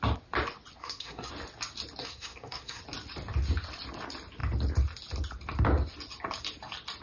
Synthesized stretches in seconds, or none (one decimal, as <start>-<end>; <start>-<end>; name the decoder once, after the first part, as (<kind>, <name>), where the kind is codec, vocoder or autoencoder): 0.8-1.3 (codec, SNAC); 2.0-2.8